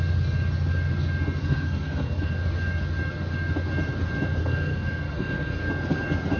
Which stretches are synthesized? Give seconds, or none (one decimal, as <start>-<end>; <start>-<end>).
1.4-2.3; 4.4-5.7